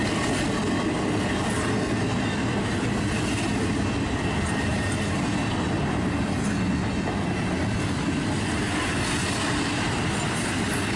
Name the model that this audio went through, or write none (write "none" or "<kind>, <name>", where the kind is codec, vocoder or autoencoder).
none